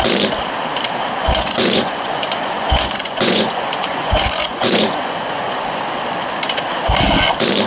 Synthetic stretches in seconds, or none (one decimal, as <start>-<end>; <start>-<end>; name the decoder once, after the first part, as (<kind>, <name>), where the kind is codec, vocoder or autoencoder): 1.2-5.8 (vocoder, Vocos)